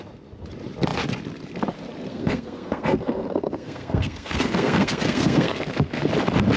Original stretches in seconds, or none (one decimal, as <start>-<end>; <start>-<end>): 0.0-2.1; 6.1-6.6